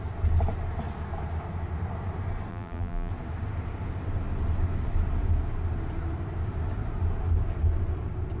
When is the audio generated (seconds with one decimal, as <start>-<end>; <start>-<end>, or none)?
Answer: 2.5-3.1